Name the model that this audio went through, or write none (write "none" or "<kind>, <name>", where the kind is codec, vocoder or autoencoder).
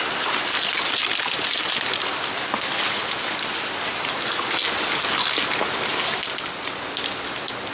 none